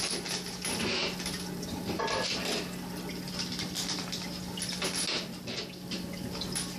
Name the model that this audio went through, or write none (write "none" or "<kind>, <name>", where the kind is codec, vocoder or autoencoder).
none